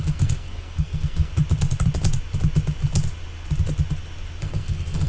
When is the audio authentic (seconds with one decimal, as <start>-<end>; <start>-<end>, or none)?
1.3-4.4